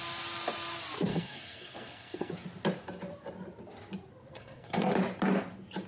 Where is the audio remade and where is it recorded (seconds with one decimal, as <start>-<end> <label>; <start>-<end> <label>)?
0.0-1.1 recorded; 1.1-2.3 remade; 2.3-4.3 recorded; 4.3-4.9 remade; 4.9-5.9 recorded